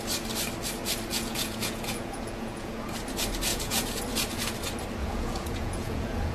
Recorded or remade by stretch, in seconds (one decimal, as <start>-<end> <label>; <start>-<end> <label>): 0.0-1.1 recorded; 1.1-2.9 remade; 2.9-3.5 recorded; 3.5-4.0 remade; 4.0-5.0 recorded; 5.0-6.3 remade